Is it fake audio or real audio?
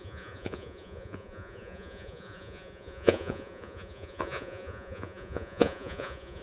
fake